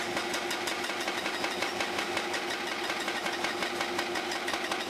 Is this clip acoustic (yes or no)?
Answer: yes